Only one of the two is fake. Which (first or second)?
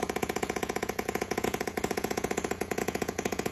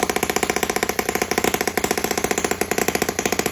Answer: first